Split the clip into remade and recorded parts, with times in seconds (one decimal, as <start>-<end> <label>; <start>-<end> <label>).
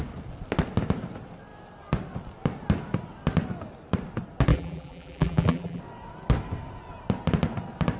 0.0-4.5 recorded; 4.5-5.8 remade; 5.8-8.0 recorded